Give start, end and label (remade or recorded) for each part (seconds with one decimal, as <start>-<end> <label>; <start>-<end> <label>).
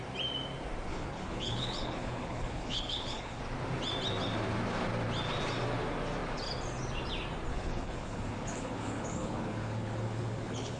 0.0-0.9 recorded; 0.9-3.4 remade; 3.4-7.5 recorded; 7.5-10.8 remade